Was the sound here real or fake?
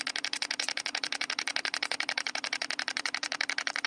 fake